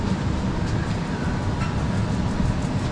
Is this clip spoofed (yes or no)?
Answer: no